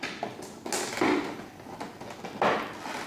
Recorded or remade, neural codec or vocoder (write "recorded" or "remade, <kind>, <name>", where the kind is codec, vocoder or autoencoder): recorded